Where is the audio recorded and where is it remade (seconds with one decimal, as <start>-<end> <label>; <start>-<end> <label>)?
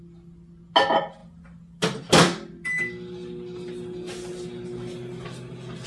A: 0.0-5.9 recorded